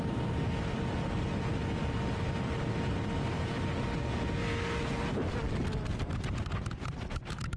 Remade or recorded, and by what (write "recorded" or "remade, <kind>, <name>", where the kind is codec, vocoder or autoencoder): recorded